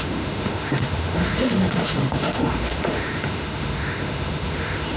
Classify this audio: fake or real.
fake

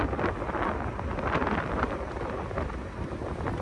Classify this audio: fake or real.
real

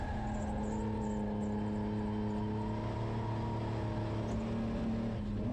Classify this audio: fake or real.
real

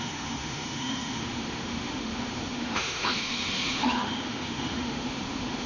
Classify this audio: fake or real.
fake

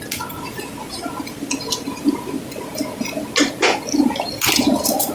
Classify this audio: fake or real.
real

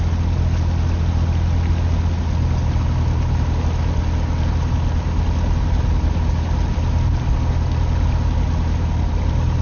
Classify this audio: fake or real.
real